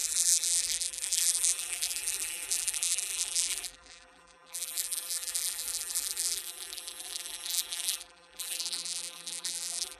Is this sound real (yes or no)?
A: no